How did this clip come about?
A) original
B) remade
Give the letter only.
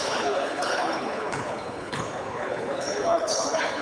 B